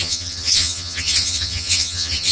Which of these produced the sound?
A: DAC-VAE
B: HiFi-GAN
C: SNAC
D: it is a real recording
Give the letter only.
B